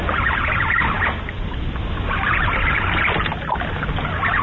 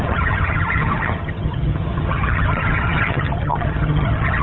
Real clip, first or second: first